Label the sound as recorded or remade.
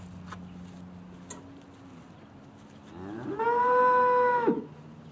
recorded